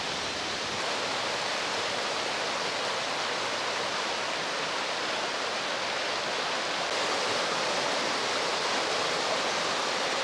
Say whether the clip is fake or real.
real